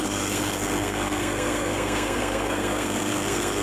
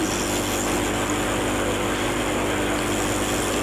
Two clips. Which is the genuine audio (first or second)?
second